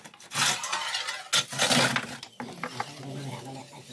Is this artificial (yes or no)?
no